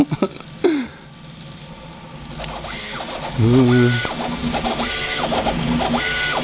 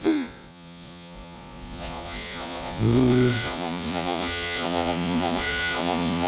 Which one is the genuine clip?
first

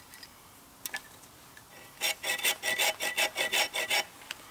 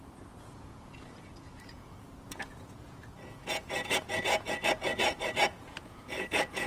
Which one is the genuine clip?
first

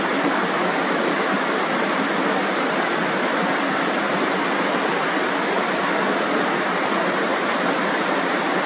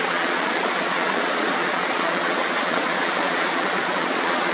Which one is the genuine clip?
first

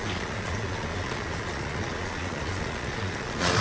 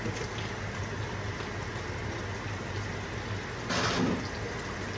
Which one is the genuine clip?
second